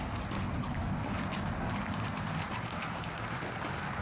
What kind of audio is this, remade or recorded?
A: recorded